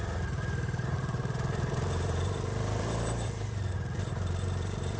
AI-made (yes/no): yes